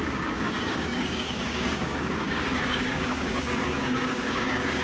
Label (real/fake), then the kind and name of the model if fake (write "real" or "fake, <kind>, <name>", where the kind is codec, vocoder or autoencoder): fake, codec, DAC